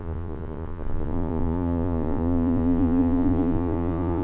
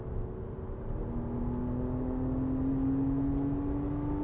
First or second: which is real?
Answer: second